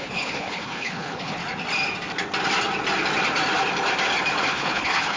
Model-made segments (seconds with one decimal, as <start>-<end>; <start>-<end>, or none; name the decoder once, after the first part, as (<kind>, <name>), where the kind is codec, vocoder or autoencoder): 0.0-1.4 (codec, HILCodec); 4.5-5.2